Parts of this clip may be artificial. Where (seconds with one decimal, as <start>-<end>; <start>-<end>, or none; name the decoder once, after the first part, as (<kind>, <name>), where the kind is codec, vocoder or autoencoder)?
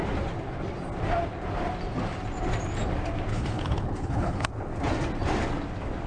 3.3-4.5 (codec, HILCodec)